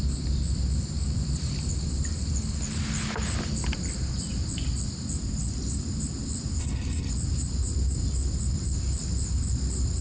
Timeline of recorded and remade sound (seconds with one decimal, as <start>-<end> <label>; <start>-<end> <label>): 0.0-6.6 recorded; 6.6-7.1 remade; 7.1-10.0 recorded